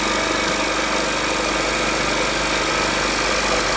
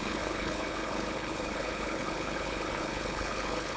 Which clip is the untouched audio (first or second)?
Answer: first